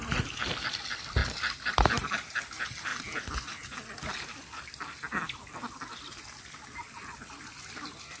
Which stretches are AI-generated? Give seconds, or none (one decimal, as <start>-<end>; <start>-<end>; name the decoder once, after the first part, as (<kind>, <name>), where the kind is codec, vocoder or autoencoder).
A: none